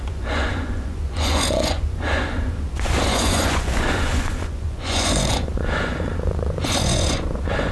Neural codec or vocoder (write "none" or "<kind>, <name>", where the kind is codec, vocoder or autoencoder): vocoder, Vocos